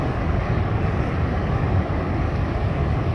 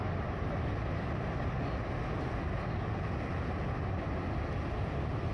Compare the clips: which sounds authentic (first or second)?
second